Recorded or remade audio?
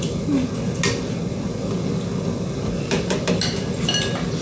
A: recorded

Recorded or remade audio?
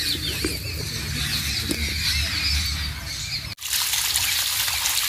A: recorded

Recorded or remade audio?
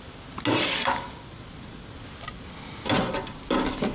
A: recorded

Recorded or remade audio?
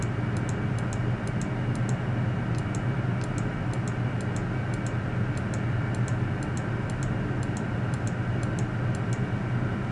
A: recorded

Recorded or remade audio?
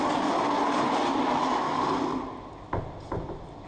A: recorded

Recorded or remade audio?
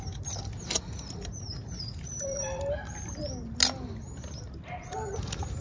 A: recorded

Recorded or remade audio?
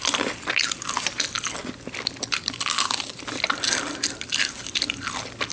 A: recorded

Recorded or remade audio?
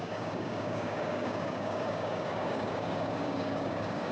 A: remade